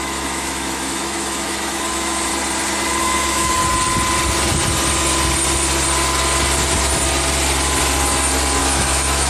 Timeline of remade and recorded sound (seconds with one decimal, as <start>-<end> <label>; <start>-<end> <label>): 0.0-2.3 remade; 2.3-3.0 recorded; 3.0-3.6 remade; 3.6-8.6 recorded; 8.6-9.3 remade